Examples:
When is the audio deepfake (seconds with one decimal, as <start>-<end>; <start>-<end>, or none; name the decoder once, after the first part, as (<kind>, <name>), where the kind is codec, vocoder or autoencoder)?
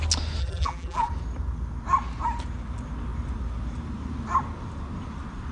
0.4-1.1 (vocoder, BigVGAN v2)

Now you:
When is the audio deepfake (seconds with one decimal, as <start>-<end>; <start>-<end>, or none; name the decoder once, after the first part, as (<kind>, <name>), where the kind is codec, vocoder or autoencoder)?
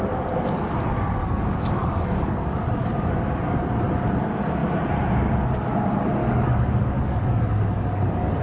1.2-3.1 (codec, DAC); 6.2-8.4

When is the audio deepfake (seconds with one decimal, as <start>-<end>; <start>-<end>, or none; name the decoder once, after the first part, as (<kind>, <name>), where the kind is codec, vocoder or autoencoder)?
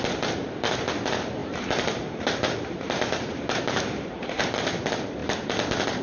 1.4-4.4 (vocoder, BigVGAN v2)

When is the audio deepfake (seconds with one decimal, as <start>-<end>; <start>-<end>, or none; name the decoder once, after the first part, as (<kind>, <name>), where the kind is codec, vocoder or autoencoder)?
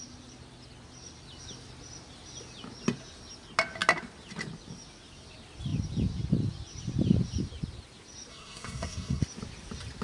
8.3-9.2 (codec, SNAC)